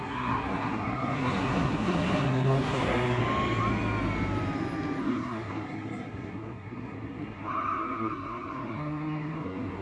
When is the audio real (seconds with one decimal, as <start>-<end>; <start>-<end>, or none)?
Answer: 3.2-5.0